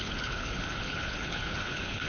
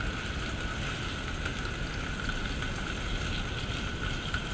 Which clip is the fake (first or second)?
first